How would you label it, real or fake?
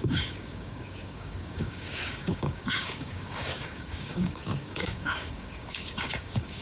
fake